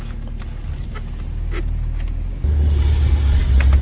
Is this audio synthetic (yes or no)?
no